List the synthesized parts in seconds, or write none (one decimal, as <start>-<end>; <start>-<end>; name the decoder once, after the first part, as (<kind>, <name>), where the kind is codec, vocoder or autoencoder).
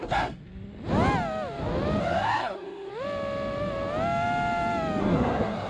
0.0-0.4 (codec, SNAC); 2.0-2.9; 5.0-5.7